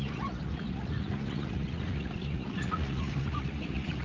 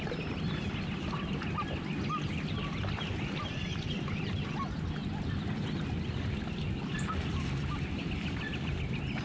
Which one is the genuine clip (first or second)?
second